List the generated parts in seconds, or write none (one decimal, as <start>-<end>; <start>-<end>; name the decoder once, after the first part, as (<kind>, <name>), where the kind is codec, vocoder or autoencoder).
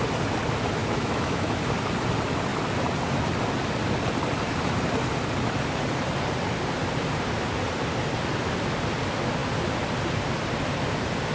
0.8-1.6 (autoencoder, DAC-VAE)